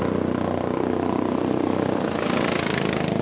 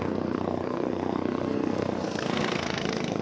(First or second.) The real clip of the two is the first